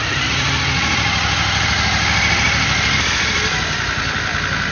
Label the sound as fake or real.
real